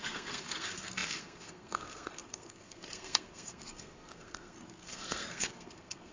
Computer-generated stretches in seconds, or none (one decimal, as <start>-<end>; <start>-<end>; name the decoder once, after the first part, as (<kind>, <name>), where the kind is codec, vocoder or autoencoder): 0.0-6.1 (codec, SNAC)